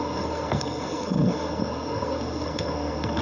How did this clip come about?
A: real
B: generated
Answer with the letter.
B